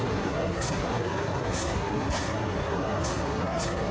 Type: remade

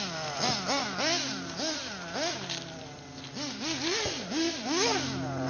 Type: recorded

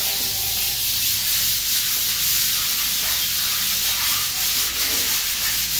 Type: recorded